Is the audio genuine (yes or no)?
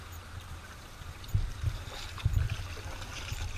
no